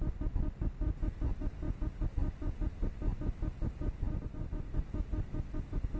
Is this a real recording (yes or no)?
yes